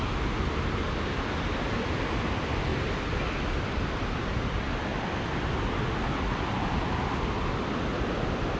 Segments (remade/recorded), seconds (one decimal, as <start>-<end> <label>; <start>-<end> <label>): 0.0-8.6 recorded